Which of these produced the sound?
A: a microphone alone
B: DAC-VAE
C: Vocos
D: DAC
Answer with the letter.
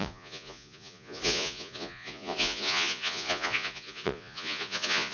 C